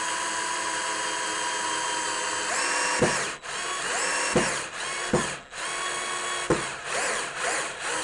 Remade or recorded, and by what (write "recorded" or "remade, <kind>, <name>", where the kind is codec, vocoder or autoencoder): recorded